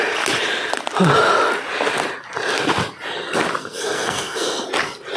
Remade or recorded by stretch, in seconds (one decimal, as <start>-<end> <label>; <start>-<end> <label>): 0.0-3.6 recorded; 3.6-4.7 remade; 4.7-5.2 recorded